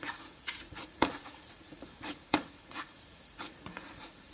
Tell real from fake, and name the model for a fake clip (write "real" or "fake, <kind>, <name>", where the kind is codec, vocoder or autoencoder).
fake, vocoder, Vocos